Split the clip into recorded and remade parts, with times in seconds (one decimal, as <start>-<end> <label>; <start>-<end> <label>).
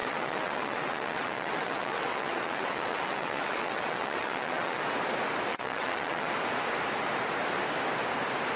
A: 0.0-4.8 remade; 4.8-5.5 recorded; 5.5-6.3 remade; 6.3-8.6 recorded